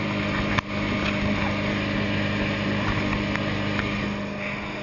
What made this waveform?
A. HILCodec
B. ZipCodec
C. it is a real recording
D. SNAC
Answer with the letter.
C